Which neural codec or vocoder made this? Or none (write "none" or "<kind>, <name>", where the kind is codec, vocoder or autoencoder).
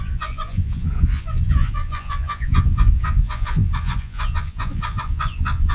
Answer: vocoder, Vocos